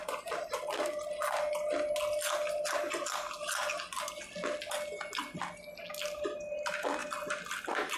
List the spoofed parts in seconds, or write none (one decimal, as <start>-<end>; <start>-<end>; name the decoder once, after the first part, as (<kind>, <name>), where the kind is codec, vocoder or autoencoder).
0.0-0.6 (vocoder, BigVGAN v2)